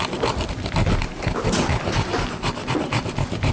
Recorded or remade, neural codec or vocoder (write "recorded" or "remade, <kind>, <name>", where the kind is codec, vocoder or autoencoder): recorded